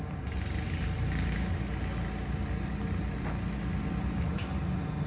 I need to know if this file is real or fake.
real